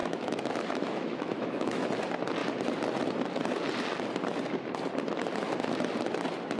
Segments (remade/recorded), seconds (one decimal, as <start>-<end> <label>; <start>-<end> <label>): 0.0-1.9 remade; 1.9-6.6 recorded